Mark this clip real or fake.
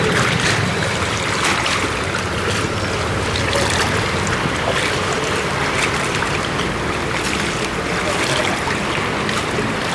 fake